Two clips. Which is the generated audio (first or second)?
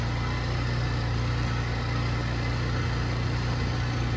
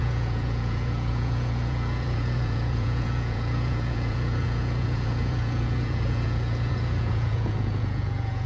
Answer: second